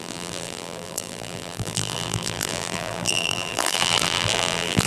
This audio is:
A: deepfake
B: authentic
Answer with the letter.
A